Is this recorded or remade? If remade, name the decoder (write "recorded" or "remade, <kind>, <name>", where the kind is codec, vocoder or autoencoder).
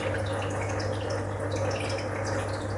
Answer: recorded